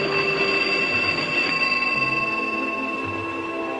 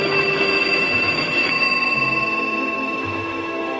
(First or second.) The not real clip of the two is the second